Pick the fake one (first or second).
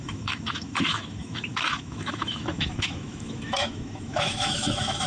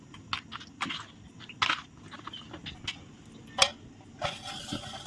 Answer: first